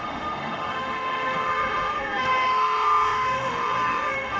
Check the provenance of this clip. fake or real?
fake